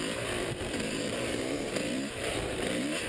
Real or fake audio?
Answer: fake